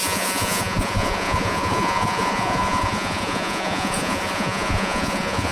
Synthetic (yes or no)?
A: yes